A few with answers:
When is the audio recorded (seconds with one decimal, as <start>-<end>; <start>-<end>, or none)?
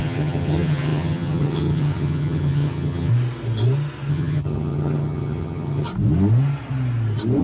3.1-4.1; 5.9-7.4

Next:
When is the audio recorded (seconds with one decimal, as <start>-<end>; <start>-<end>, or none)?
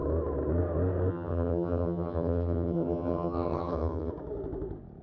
0.0-1.1; 4.1-5.0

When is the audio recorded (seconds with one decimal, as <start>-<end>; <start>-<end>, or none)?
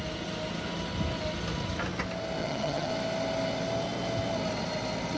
0.0-2.4; 2.9-5.2